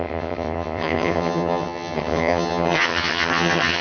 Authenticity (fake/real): fake